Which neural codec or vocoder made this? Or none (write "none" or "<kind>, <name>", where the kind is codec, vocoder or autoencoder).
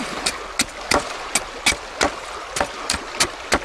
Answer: none